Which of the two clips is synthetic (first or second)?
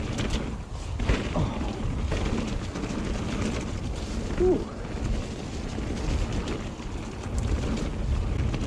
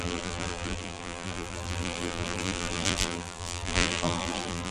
second